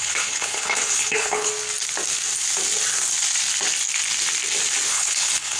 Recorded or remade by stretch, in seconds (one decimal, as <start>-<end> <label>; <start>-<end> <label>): 0.0-1.5 remade; 1.5-4.9 recorded; 4.9-5.6 remade